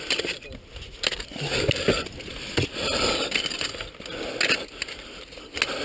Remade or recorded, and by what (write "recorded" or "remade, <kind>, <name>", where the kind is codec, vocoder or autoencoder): recorded